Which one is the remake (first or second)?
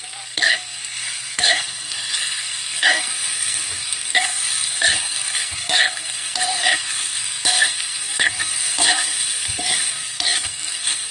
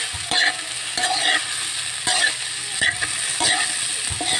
first